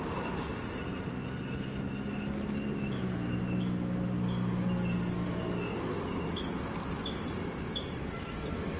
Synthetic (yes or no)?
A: no